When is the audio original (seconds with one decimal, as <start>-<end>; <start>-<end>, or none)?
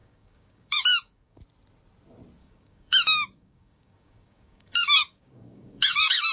1.4-2.4